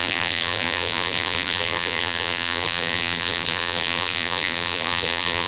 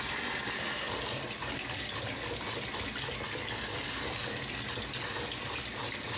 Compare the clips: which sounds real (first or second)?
second